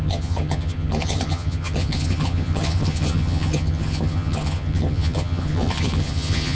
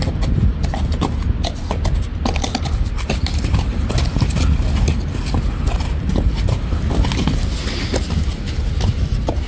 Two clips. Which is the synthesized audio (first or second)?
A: first